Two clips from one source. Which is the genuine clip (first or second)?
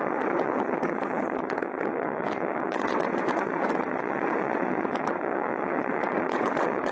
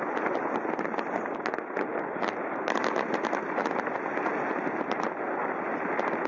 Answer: second